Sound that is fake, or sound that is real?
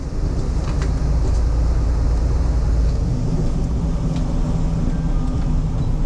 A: real